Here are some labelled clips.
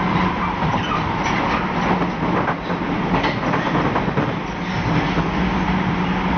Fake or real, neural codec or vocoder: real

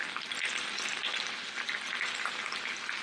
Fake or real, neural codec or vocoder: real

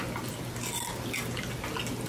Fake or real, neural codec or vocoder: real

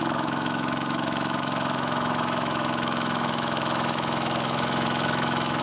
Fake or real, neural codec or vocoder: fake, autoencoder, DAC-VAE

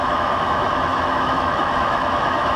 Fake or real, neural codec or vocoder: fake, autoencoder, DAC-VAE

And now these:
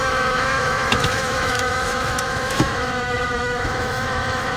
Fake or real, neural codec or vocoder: fake, autoencoder, DAC-VAE